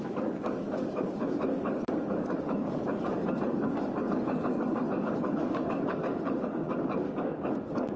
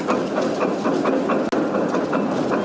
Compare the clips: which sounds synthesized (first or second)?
first